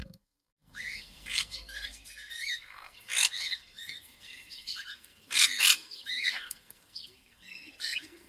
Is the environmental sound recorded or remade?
remade